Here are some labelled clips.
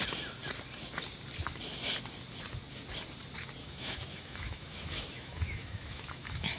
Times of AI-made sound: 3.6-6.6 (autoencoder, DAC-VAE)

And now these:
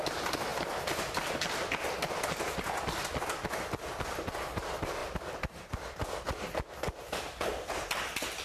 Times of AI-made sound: none

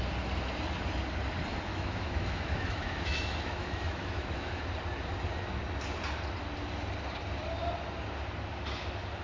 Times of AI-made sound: 1.7-4.6 (autoencoder, DAC-VAE)

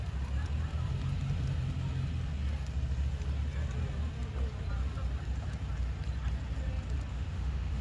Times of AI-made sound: 7.1-7.8 (autoencoder, DAC-VAE)

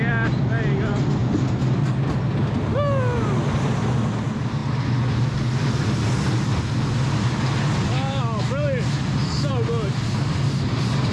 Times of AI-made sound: none

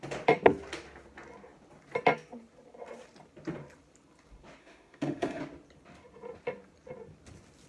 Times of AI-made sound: 4.6-5.4 (autoencoder, DAC-VAE)